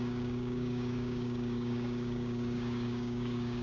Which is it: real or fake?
fake